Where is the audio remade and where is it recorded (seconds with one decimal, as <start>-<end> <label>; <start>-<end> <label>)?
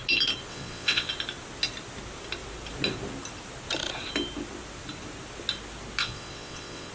0.0-0.5 recorded; 0.5-1.1 remade; 1.1-6.0 recorded; 6.0-6.9 remade